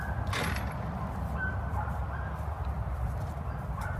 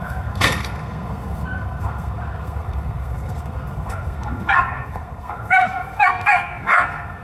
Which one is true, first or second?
first